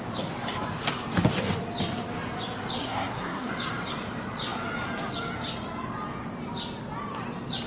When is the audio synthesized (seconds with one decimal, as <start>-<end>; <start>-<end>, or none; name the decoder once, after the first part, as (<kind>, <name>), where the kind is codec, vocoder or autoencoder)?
2.8-3.5 (codec, SNAC)